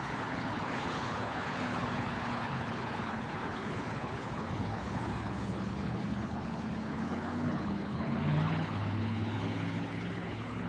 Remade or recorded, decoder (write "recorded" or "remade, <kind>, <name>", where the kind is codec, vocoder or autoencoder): remade, codec, HILCodec